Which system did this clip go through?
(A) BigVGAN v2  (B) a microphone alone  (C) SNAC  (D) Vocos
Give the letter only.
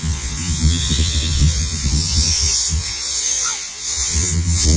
D